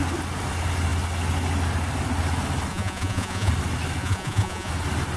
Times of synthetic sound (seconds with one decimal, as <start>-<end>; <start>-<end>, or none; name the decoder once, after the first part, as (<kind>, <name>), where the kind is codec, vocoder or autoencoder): 2.7-3.5 (vocoder, Vocos); 4.0-4.7

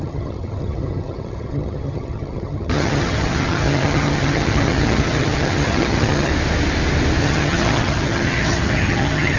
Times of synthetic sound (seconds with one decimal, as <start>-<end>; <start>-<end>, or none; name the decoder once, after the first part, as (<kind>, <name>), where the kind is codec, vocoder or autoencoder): 0.0-6.3 (vocoder, HiFi-GAN); 7.2-9.4

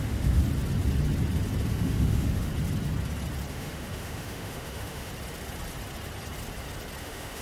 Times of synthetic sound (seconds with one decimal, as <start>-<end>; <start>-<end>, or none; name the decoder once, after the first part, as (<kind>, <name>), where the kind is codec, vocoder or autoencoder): 0.0-0.4 (autoencoder, DAC-VAE); 1.7-2.5; 3.5-5.1; 7.0-7.4